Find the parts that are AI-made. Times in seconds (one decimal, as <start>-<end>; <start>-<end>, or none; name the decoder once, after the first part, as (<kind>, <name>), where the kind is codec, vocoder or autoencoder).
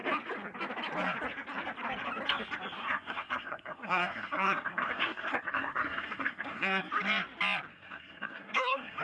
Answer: 2.8-6.9 (codec, SNAC); 7.7-9.0